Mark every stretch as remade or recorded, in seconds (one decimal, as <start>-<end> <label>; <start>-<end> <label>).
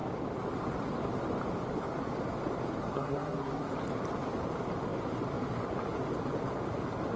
0.0-2.8 recorded; 2.8-3.7 remade; 3.7-7.2 recorded